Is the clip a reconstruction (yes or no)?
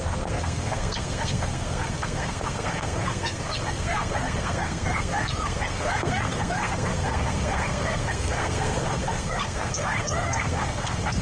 yes